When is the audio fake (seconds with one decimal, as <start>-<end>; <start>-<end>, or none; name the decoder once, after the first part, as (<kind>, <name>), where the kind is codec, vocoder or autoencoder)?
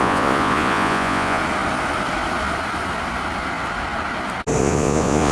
0.0-1.4 (vocoder, Vocos); 4.6-5.3